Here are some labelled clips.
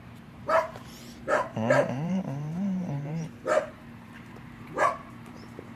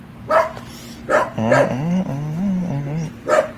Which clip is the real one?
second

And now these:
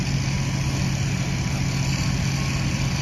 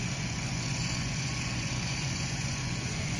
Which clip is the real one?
first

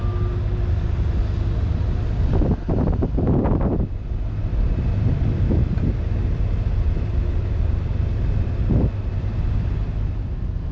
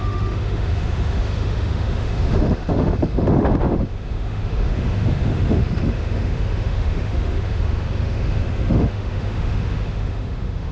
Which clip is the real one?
first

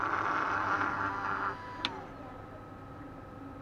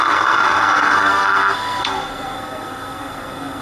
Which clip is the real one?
first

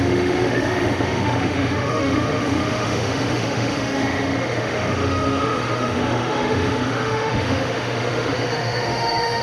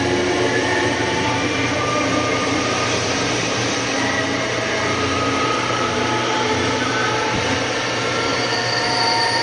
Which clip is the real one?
second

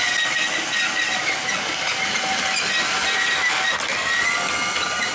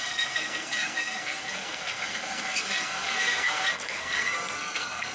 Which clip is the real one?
first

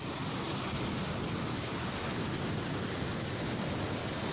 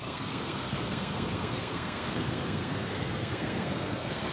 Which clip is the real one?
first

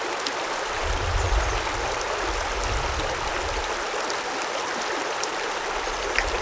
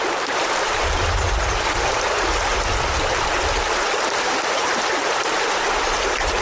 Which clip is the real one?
first